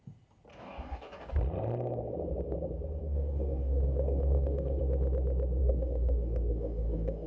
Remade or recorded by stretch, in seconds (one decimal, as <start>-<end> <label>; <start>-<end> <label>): 0.0-0.5 recorded; 0.5-1.3 remade; 1.3-3.0 recorded; 3.0-4.8 remade; 4.8-5.6 recorded; 5.6-7.3 remade

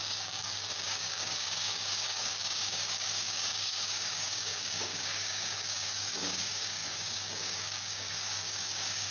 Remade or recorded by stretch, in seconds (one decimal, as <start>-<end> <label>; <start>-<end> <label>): 0.0-9.1 remade

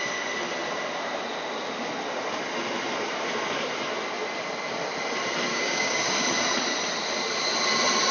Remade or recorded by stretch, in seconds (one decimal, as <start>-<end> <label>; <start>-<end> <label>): 0.0-5.5 recorded; 5.5-6.1 remade; 6.1-8.1 recorded

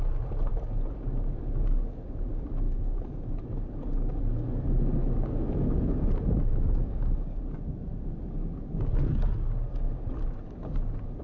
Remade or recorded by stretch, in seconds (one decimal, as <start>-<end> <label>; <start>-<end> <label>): 0.0-6.5 recorded; 6.5-7.4 remade; 7.4-11.2 recorded

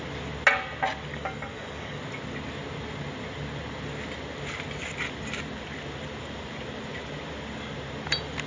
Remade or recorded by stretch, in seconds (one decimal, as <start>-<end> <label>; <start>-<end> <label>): 0.0-1.1 recorded; 1.1-2.0 remade; 2.0-8.5 recorded